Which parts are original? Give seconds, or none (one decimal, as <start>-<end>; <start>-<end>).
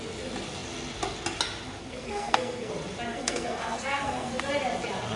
0.0-1.8; 2.7-3.1; 4.5-5.2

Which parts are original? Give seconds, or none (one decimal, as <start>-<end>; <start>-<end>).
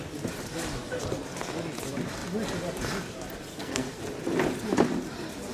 0.0-3.5; 4.0-5.5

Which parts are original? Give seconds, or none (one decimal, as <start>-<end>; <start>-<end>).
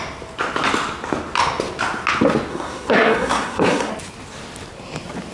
0.0-2.5; 3.9-5.3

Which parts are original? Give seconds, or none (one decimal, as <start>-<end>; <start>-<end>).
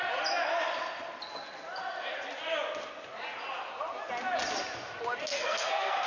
0.0-5.3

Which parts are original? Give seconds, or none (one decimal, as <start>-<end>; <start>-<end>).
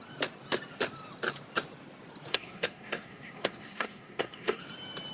0.0-2.3; 4.6-5.1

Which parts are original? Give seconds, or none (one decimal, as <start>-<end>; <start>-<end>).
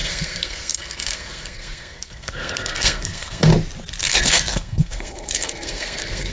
3.5-4.0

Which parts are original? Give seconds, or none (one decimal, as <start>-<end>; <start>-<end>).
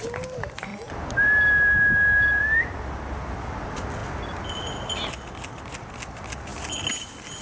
0.0-7.4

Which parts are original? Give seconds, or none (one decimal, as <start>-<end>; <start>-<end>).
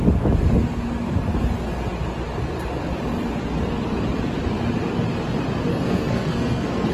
0.0-5.7